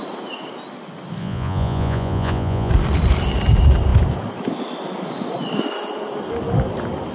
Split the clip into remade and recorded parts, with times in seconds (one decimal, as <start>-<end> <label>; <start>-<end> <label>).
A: 0.0-1.2 recorded; 1.2-2.7 remade; 2.7-7.1 recorded